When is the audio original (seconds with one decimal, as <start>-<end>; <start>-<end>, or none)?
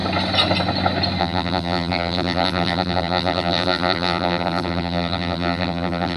0.0-1.2